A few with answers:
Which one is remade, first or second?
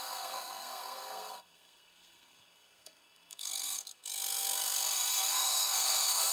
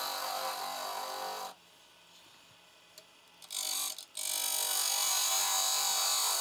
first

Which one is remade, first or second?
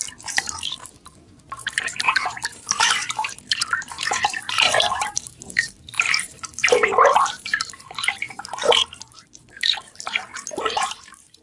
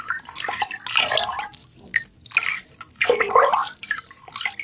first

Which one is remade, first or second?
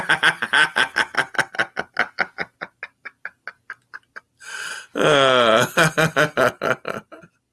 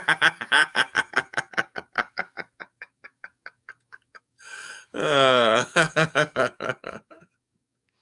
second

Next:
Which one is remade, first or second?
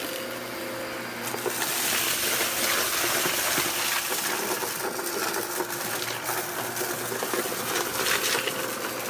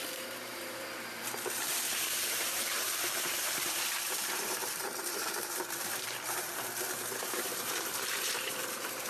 second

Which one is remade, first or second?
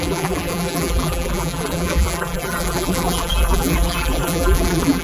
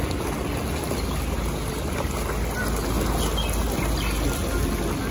first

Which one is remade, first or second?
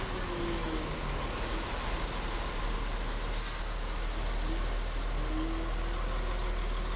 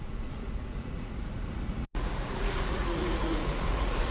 second